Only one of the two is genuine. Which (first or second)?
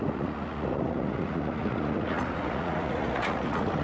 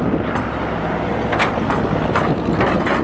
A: second